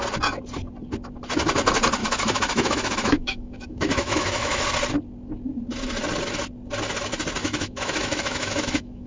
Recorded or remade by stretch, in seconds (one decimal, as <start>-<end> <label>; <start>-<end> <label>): 0.0-2.0 recorded; 2.0-4.6 remade; 4.6-7.4 recorded; 7.4-9.1 remade